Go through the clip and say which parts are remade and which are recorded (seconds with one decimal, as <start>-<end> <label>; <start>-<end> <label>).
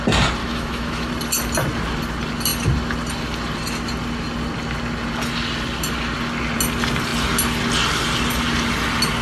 0.0-0.4 recorded; 0.4-1.1 remade; 1.1-9.2 recorded